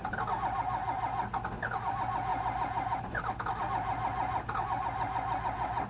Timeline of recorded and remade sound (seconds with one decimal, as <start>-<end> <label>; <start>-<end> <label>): 0.0-5.9 recorded